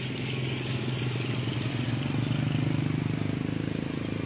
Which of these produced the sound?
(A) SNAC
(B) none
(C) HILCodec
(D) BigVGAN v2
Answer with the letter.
B